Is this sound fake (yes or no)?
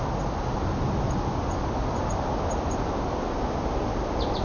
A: no